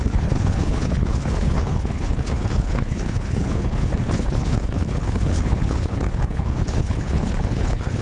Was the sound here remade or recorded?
remade